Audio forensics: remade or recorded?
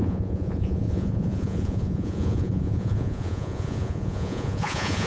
remade